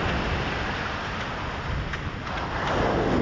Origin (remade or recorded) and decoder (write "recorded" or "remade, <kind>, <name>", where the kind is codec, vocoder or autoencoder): recorded